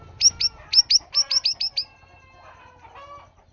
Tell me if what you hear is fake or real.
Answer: real